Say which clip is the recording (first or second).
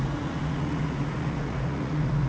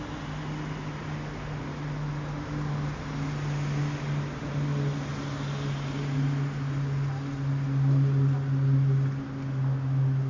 second